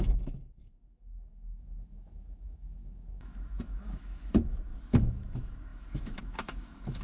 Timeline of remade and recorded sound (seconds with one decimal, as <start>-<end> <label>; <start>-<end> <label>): 0.0-7.0 remade